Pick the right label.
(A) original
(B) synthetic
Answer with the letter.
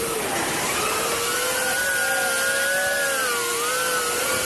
A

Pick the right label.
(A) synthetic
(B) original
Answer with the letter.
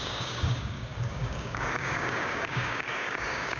A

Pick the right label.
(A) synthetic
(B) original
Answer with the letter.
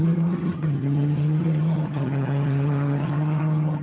A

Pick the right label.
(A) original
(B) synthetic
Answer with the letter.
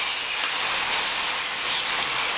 A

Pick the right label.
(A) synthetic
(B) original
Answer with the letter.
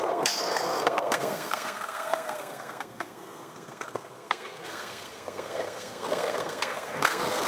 A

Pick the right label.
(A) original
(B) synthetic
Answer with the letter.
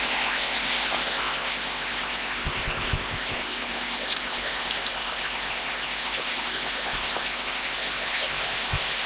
B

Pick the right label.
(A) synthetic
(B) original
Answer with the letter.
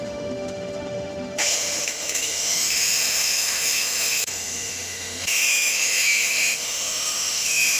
A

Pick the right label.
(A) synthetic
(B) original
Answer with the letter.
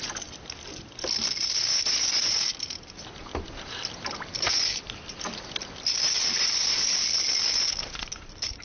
B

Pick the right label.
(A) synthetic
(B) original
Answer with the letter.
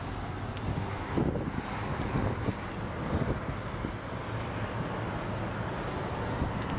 B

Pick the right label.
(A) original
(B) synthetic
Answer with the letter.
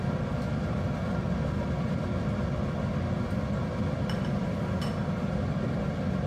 A